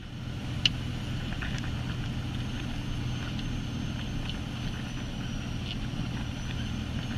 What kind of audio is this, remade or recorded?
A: recorded